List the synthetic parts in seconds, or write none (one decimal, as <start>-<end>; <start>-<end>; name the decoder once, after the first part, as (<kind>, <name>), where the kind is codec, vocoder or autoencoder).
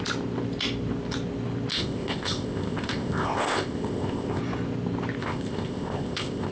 1.7-4.4 (codec, ZipCodec); 5.2-6.5